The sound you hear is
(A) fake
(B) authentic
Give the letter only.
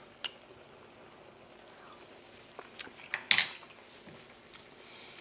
B